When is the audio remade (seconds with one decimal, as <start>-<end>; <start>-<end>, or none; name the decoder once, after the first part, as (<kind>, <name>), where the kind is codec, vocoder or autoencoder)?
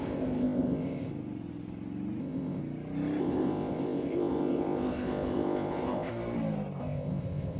0.0-1.1 (codec, ZipCodec); 2.2-2.6; 3.2-6.1; 6.8-7.6